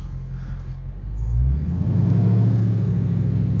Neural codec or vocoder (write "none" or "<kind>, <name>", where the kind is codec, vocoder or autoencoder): codec, SNAC